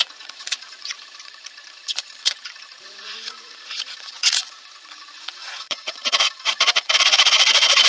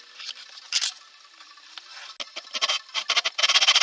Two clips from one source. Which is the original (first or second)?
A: second